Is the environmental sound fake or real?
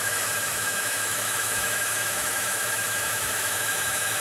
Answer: fake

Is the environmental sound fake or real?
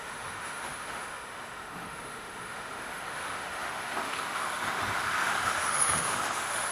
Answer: fake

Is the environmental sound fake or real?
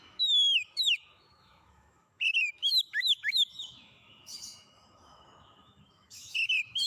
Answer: fake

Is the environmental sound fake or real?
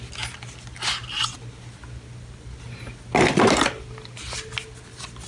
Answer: real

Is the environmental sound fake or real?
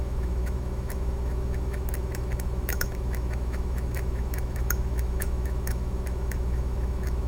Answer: fake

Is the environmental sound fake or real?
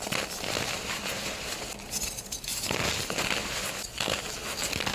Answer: real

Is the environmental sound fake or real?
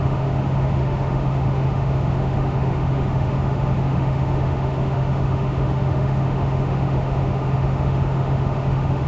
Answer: fake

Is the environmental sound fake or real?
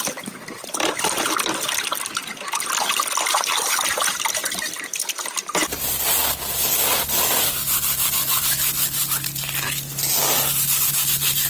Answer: real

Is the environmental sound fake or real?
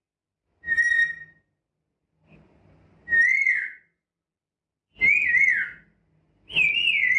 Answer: real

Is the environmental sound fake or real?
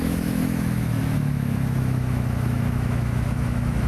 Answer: fake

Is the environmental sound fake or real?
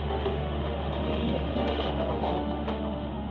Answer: fake